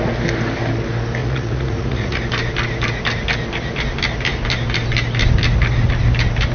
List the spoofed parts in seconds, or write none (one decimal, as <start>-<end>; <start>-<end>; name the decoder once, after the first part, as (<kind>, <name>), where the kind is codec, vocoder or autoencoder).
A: 1.2-2.2 (vocoder, Vocos)